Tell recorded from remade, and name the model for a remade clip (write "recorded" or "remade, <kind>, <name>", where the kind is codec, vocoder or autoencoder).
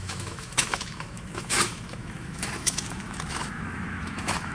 remade, autoencoder, DAC-VAE